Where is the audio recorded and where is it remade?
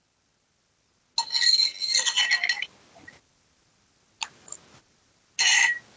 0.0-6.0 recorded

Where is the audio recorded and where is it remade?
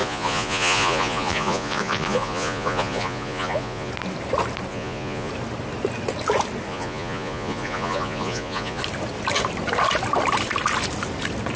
0.0-3.9 remade; 3.9-4.7 recorded; 4.7-5.3 remade; 5.3-6.7 recorded; 6.7-8.8 remade; 8.8-11.6 recorded